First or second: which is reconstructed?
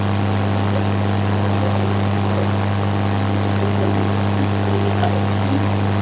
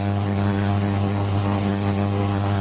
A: second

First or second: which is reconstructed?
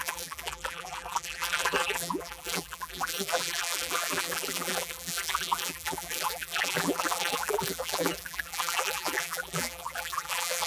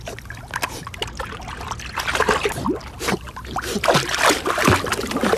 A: first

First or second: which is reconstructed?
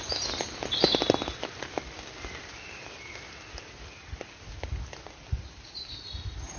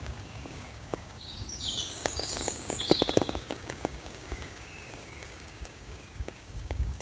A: second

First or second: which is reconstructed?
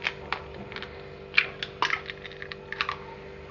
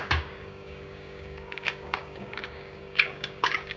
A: second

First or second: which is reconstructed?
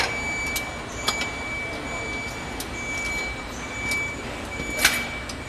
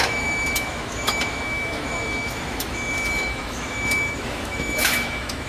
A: second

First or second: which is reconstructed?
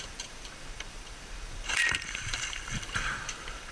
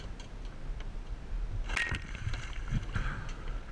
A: first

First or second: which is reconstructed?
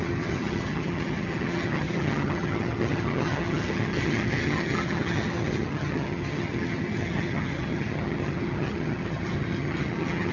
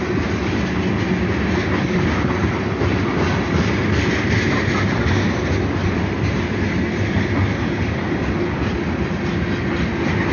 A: first